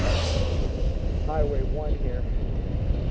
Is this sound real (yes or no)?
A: yes